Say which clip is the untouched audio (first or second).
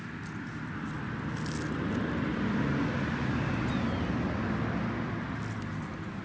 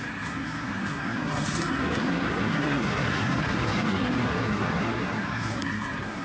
first